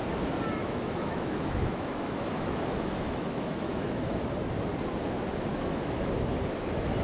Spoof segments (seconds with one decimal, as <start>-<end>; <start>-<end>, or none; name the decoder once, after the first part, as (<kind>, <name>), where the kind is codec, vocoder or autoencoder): 0.6-4.3 (autoencoder, DAC-VAE); 5.5-6.1